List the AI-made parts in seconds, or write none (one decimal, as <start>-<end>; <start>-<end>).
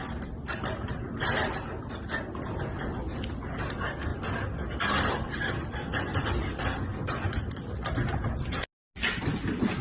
none